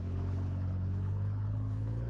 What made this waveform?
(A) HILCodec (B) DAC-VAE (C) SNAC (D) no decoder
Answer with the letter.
A